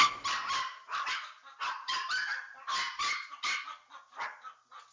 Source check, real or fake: real